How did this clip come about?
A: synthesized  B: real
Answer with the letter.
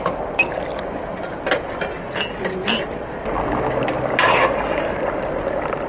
B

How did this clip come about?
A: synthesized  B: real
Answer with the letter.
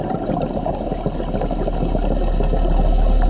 B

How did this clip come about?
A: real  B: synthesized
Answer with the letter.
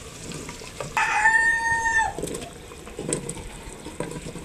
B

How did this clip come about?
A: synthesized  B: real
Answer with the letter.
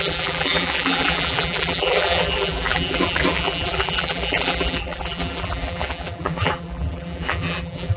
A